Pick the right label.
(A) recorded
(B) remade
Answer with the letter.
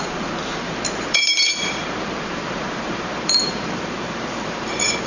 B